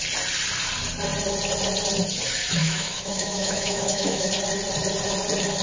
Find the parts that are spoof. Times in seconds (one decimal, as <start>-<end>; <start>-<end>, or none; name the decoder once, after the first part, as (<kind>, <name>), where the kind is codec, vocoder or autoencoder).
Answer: 2.6-4.3 (autoencoder, DAC-VAE)